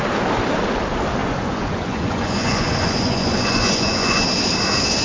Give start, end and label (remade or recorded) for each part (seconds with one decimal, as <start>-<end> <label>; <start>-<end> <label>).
0.0-1.2 recorded; 1.2-4.2 remade; 4.2-5.0 recorded